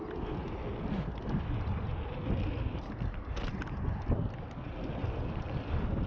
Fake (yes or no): no